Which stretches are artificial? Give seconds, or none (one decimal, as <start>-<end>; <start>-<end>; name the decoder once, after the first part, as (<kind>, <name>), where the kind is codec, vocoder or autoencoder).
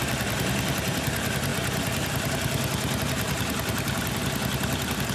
none